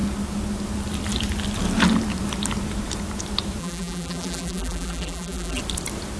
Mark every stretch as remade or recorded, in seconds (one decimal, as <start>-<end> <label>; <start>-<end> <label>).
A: 0.0-3.6 recorded; 3.6-5.6 remade; 5.6-6.2 recorded